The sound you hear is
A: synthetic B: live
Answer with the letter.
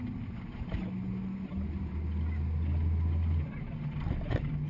B